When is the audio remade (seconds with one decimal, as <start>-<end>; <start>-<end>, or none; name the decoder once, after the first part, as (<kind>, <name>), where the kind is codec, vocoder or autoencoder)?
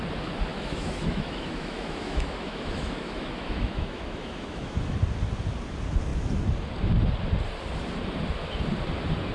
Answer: 0.5-5.0 (autoencoder, DAC-VAE)